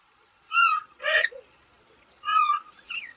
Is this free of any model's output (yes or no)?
no